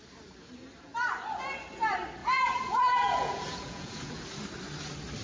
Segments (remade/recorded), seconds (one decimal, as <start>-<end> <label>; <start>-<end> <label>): 0.0-2.2 recorded; 2.2-4.2 remade; 4.2-5.2 recorded